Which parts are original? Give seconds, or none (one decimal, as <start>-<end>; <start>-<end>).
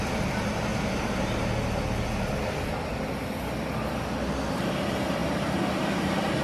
0.7-4.5